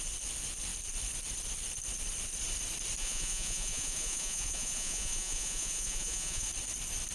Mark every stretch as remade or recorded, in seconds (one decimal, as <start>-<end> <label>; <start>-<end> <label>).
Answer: 0.0-3.0 recorded; 3.0-6.5 remade; 6.5-7.1 recorded